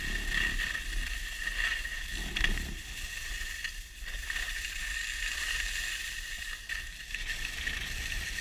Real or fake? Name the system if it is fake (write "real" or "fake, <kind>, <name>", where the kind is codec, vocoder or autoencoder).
real